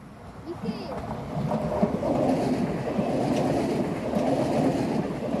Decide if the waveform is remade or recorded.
recorded